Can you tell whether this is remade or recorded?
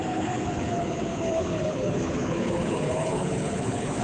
remade